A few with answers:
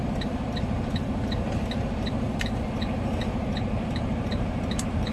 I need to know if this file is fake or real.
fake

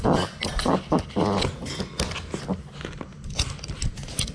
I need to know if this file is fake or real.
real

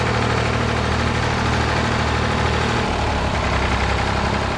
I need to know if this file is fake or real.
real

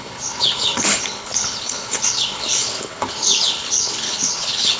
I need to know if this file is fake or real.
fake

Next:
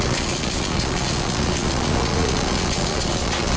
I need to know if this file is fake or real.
fake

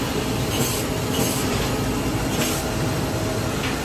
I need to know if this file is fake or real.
real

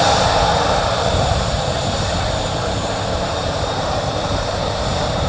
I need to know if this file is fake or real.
fake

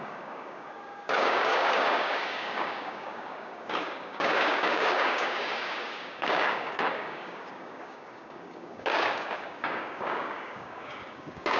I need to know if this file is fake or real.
fake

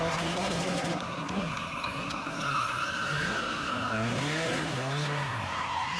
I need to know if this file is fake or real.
fake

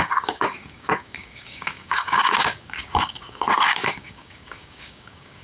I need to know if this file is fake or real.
fake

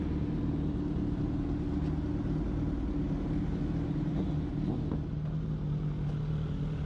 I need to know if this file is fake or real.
real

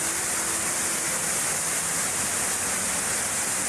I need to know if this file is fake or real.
real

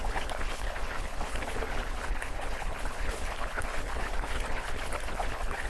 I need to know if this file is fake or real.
fake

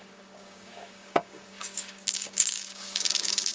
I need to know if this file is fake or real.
fake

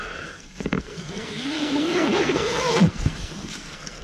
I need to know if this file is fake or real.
fake